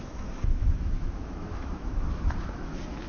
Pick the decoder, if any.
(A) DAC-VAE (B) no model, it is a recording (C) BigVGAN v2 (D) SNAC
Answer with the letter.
A